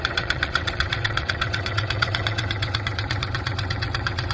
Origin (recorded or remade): remade